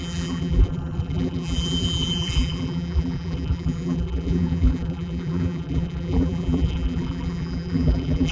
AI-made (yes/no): yes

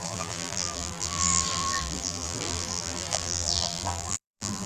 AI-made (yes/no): yes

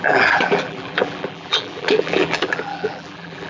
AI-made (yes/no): yes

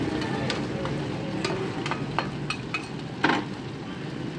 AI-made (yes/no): no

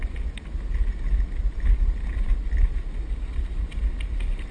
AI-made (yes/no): no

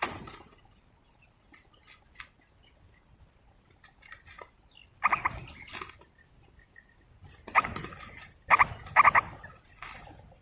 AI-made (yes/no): no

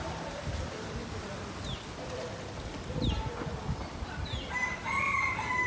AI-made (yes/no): no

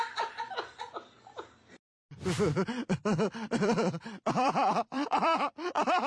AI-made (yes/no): yes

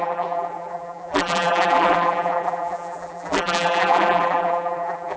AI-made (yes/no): yes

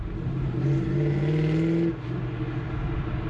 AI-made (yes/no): no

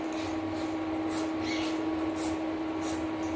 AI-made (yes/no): no